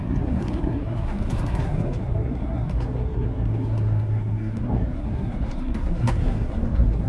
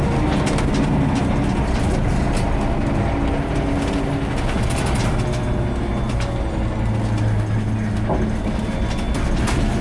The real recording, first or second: second